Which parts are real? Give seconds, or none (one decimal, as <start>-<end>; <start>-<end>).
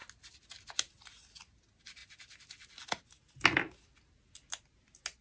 0.0-5.2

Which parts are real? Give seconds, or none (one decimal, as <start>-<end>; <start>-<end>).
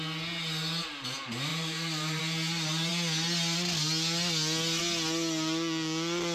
0.0-1.5; 2.2-6.3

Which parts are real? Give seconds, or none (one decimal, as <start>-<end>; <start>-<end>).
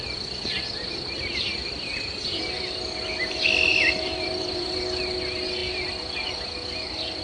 0.0-3.7; 4.8-7.2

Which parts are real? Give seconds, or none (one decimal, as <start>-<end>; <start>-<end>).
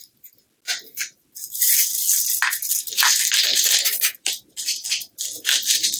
0.0-1.4; 1.9-3.5; 4.5-6.0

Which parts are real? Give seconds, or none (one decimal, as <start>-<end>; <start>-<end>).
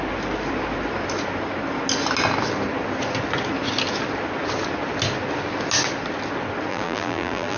0.0-6.7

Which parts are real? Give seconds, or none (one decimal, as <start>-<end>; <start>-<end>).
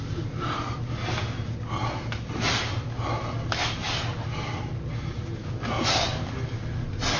0.0-7.2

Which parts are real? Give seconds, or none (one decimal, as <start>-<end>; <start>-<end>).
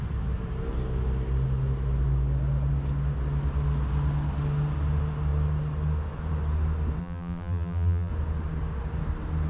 0.0-7.0; 8.1-9.5